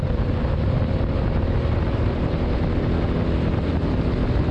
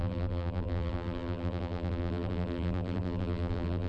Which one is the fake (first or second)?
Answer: second